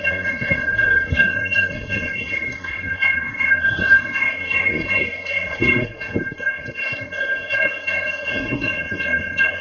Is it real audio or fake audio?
fake